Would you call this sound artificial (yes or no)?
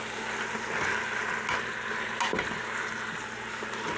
no